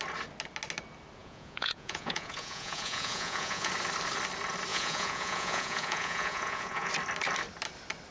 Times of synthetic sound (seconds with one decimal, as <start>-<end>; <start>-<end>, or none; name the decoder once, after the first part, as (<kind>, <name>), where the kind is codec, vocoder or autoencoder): 1.2-3.7 (vocoder, Vocos); 4.7-6.9